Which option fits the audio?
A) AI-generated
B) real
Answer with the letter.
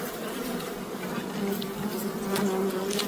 B